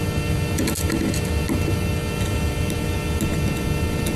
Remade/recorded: recorded